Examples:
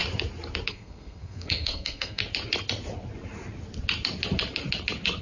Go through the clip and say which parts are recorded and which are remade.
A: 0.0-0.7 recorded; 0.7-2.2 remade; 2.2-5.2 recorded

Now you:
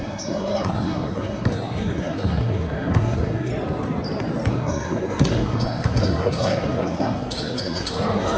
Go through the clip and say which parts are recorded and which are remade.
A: 0.0-3.5 remade; 3.5-4.5 recorded; 4.5-8.4 remade

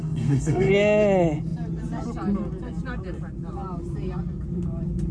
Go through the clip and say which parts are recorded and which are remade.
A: 0.0-0.7 remade; 0.7-5.1 recorded

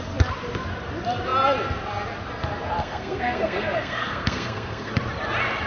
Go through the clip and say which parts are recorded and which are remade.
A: 0.0-2.8 recorded; 2.8-4.9 remade; 4.9-5.7 recorded

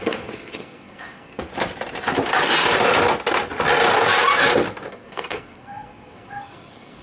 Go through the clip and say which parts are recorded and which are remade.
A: 0.0-1.5 remade; 1.5-4.9 recorded; 4.9-7.0 remade

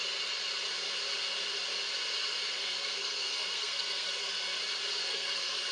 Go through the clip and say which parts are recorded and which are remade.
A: 0.0-2.6 recorded; 2.6-4.6 remade; 4.6-5.0 recorded; 5.0-5.7 remade